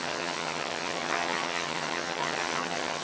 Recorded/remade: remade